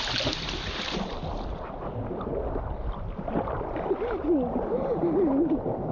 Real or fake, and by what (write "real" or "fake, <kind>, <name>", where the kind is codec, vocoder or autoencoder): real